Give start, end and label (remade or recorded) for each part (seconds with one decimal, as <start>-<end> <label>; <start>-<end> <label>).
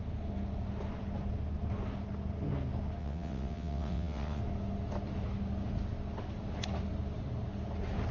0.0-3.0 recorded; 3.0-4.4 remade; 4.4-8.1 recorded